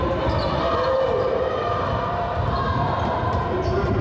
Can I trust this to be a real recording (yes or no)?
yes